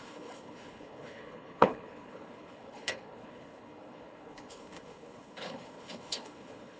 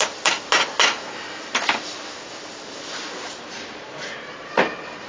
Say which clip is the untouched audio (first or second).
second